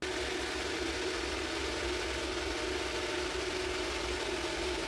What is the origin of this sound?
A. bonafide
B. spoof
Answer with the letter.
A